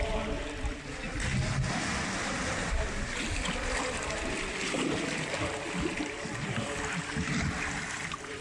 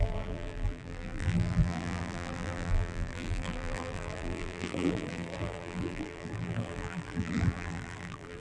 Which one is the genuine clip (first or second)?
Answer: first